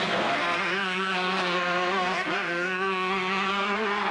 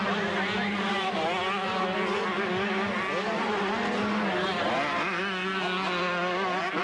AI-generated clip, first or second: first